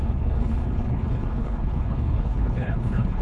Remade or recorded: remade